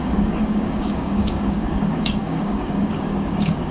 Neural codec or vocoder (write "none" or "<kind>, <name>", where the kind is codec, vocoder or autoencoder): codec, DAC